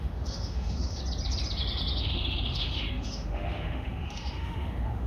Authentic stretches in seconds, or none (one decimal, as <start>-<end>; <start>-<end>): 1.0-2.0